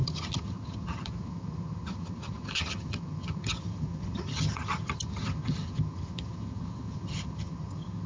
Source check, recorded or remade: remade